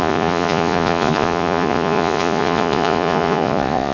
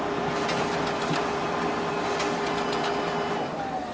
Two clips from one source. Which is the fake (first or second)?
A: first